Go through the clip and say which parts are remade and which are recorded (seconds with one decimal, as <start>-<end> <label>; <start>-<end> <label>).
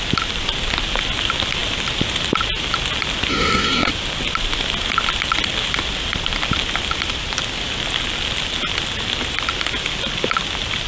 0.0-3.3 recorded; 3.3-3.9 remade; 3.9-10.9 recorded